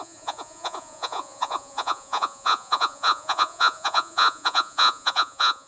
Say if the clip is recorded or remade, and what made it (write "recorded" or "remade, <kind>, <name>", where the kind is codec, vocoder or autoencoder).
remade, vocoder, Vocos